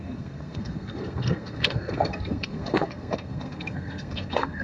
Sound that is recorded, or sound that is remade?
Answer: remade